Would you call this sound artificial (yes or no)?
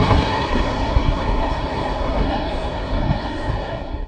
yes